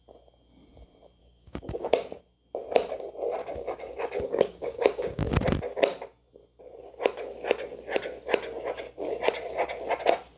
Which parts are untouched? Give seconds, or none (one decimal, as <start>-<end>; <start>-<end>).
0.0-1.2; 2.2-3.4; 5.3-10.4